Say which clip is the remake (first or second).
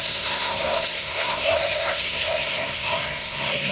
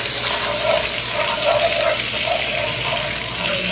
first